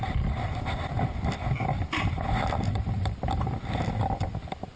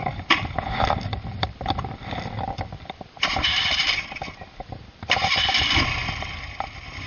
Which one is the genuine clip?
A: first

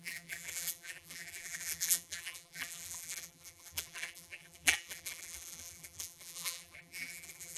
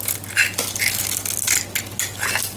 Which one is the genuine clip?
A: second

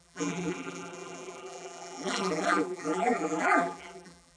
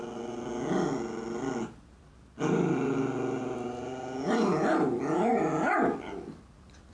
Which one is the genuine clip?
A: second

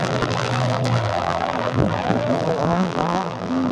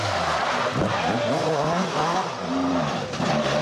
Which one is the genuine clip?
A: second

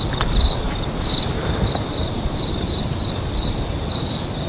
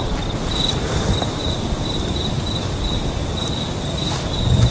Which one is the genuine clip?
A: second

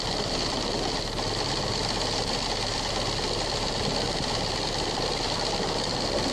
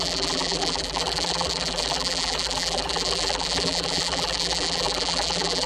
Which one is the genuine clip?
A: first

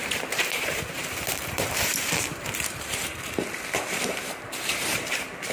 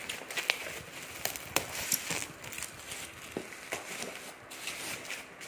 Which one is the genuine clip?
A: second